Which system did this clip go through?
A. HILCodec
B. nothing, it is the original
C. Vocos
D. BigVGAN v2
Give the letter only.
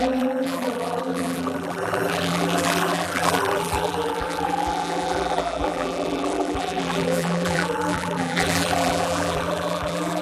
D